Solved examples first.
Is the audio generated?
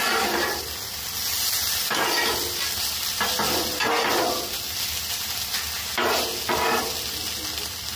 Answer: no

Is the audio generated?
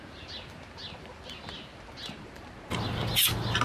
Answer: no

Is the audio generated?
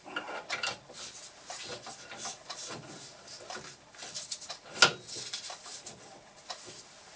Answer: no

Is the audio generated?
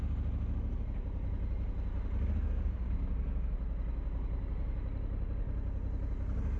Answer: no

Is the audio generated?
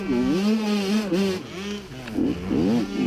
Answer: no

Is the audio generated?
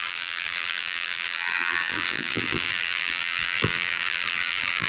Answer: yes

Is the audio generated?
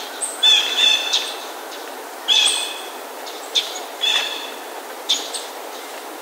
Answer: yes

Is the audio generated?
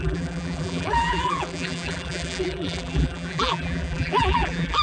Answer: yes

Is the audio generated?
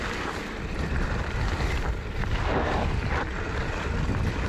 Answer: yes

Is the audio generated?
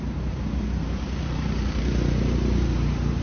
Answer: yes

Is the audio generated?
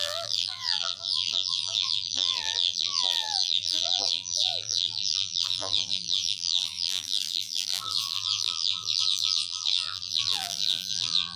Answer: yes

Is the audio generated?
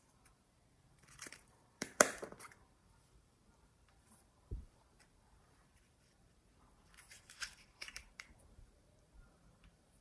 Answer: yes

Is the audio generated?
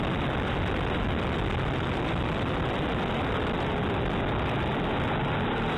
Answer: no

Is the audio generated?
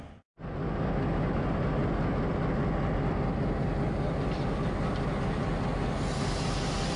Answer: no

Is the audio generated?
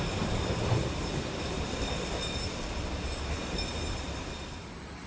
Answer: no